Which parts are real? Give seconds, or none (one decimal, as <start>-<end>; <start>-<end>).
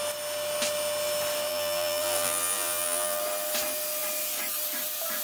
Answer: 0.0-1.5; 3.2-5.2